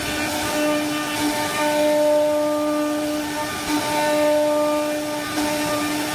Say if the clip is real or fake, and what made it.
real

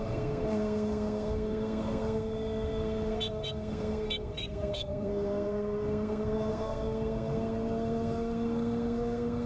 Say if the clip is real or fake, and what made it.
fake, codec, SNAC